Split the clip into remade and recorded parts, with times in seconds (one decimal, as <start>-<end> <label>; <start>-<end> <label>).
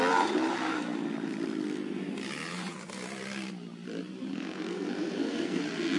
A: 0.0-4.3 recorded; 4.3-5.6 remade; 5.6-6.0 recorded